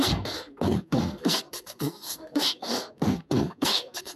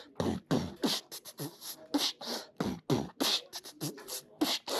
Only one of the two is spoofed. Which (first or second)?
first